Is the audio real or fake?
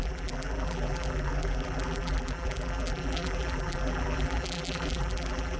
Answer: fake